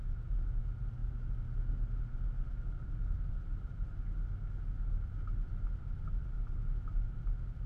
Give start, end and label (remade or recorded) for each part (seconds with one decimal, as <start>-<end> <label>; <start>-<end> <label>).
0.0-7.7 recorded